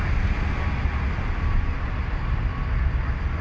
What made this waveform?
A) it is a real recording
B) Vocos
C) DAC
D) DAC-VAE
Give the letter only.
A